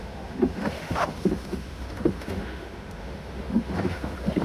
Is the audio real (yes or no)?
no